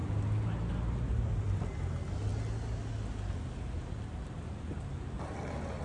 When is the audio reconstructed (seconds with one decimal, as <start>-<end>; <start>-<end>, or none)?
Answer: none